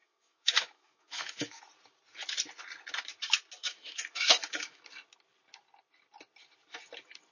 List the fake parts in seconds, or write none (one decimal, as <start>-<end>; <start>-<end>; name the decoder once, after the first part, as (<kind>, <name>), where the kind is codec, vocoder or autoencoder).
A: 0.0-1.6 (autoencoder, DAC-VAE); 3.6-4.8

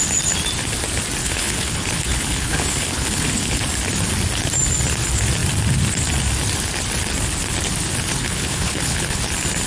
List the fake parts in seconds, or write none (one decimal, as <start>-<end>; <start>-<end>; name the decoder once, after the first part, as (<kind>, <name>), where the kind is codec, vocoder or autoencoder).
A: 1.2-3.6 (codec, HILCodec); 8.2-9.2

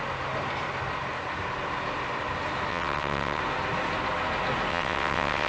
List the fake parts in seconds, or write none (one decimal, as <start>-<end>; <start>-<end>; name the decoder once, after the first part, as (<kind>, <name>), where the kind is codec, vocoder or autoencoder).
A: 2.7-3.4 (vocoder, WaveNeXt); 4.7-5.5

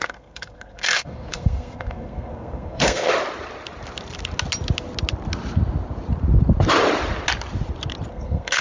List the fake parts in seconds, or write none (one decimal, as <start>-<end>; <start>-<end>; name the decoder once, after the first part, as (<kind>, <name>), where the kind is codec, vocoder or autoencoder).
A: 0.0-3.1 (codec, SNAC); 8.1-8.6

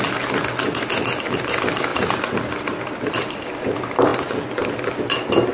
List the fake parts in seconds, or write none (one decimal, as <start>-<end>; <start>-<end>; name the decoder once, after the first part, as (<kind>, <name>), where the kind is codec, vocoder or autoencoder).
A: none

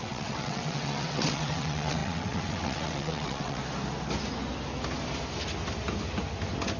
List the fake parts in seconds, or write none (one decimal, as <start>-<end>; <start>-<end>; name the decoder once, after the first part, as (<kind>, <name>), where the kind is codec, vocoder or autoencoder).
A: 0.0-3.6 (vocoder, WaveNeXt)